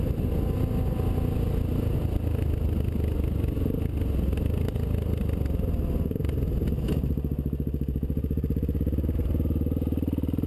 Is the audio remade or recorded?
recorded